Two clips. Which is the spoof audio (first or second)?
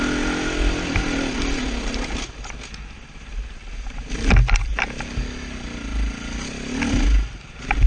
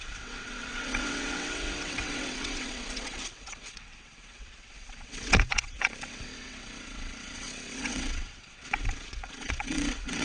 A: second